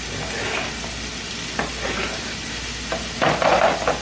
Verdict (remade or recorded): recorded